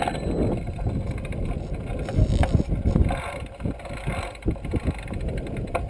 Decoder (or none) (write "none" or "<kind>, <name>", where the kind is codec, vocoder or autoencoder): none